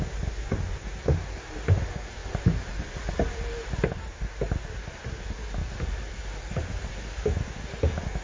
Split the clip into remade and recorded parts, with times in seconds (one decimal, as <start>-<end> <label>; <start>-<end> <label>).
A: 0.0-2.2 recorded; 2.2-3.5 remade; 3.5-5.6 recorded; 5.6-6.9 remade; 6.9-8.2 recorded